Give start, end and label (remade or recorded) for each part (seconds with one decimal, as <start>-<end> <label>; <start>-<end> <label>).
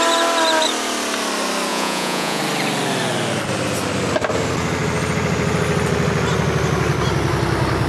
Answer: 0.0-1.7 recorded; 1.7-2.4 remade; 2.4-7.9 recorded